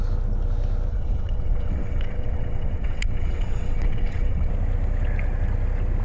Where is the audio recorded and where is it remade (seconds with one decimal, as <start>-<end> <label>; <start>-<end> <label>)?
0.0-0.9 recorded; 0.9-4.5 remade; 4.5-6.0 recorded